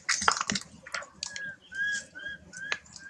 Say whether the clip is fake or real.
real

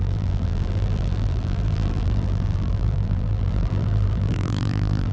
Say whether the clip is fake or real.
fake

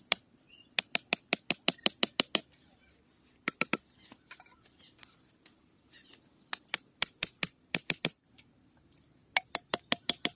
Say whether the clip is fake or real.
real